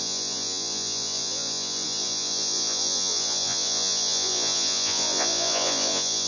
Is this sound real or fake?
fake